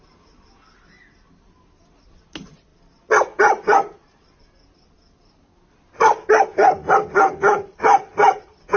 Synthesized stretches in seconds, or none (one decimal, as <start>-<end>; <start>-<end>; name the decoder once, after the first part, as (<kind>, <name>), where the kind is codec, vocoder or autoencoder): none